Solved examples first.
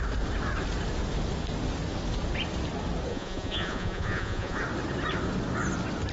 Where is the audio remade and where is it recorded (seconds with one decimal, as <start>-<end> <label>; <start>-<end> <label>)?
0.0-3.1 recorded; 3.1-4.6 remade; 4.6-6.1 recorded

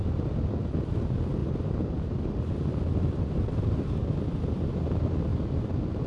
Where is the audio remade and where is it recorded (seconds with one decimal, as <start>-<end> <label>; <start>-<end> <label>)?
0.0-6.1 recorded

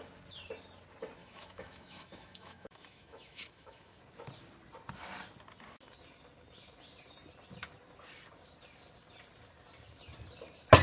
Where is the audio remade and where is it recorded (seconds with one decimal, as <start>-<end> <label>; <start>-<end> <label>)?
0.0-1.2 recorded; 1.2-4.0 remade; 4.0-10.8 recorded